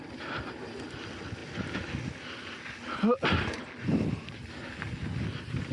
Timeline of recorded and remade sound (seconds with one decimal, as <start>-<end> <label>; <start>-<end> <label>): 0.0-5.7 recorded